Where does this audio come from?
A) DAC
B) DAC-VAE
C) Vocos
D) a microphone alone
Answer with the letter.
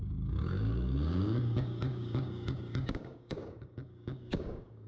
A